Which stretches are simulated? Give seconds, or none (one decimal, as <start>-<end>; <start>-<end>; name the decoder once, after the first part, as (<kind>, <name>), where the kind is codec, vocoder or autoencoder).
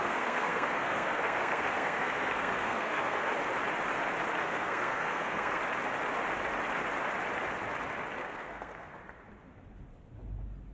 0.0-3.3 (codec, SNAC); 4.4-5.6; 8.2-8.9